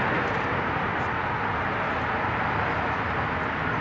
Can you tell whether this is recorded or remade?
recorded